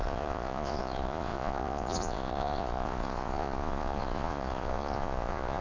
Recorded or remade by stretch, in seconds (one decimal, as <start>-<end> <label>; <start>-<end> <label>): 0.0-5.6 remade